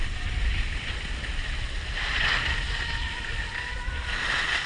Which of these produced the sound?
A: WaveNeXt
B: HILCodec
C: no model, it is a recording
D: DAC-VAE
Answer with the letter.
C